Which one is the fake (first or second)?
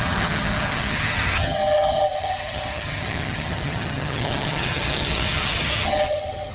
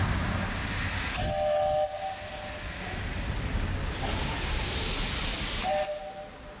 first